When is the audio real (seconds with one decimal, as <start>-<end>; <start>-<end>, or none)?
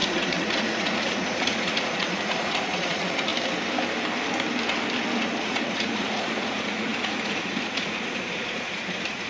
3.3-5.4